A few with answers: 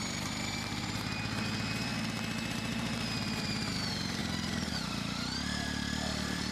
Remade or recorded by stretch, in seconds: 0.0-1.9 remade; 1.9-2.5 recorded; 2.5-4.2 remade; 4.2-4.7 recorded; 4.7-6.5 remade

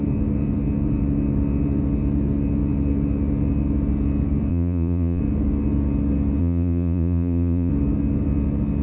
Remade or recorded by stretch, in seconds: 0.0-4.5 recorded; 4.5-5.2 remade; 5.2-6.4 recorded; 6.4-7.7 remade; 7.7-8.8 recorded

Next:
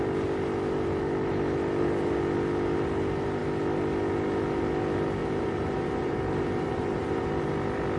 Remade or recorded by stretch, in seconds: 0.0-5.2 recorded; 5.2-7.3 remade; 7.3-8.0 recorded

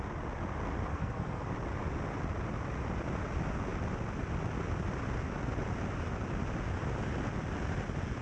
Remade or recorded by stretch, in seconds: 0.0-0.9 recorded; 0.9-1.5 remade; 1.5-8.2 recorded

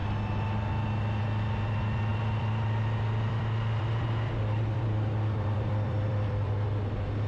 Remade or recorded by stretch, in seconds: 0.0-2.1 recorded; 2.1-6.5 remade; 6.5-7.3 recorded

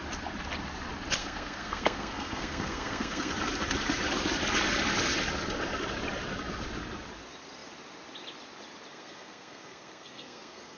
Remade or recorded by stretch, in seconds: 0.0-1.2 recorded; 1.2-3.3 remade; 3.3-8.9 recorded; 8.9-10.8 remade

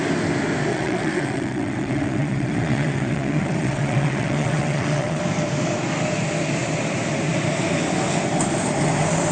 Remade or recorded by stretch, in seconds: 0.0-0.7 recorded; 0.7-5.2 remade; 5.2-9.3 recorded

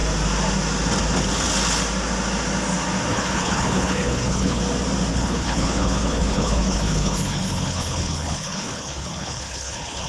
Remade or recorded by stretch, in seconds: 0.0-3.1 recorded; 3.1-4.6 remade; 4.6-5.1 recorded; 5.1-10.1 remade